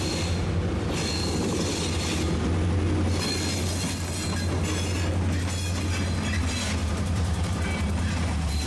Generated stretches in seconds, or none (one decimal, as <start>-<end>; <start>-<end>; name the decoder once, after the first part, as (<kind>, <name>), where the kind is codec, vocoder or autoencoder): 6.8-8.7 (vocoder, BigVGAN v2)